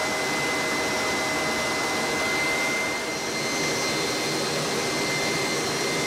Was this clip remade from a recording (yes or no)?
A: no